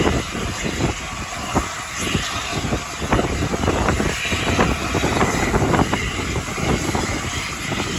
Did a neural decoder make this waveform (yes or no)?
no